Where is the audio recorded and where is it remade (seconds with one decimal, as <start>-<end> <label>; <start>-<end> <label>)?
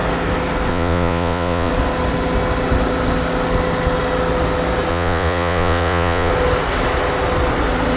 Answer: 0.0-0.7 recorded; 0.7-1.7 remade; 1.7-4.9 recorded; 4.9-6.3 remade; 6.3-8.0 recorded